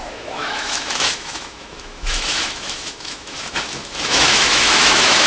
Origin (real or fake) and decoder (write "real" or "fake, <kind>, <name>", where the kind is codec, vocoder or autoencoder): fake, autoencoder, DAC-VAE